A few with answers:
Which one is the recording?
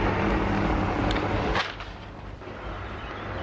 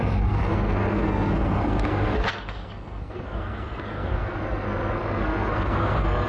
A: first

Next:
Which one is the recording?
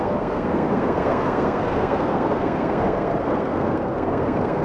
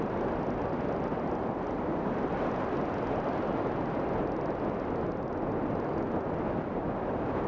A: second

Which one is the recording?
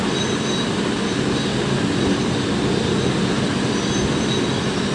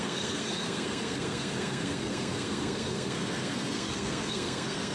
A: first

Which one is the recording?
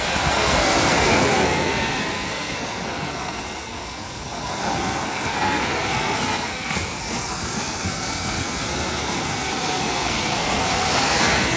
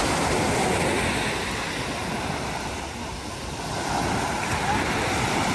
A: second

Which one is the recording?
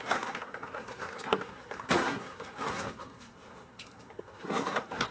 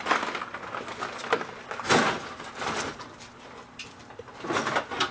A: second